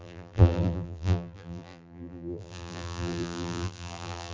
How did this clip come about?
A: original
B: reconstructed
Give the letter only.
B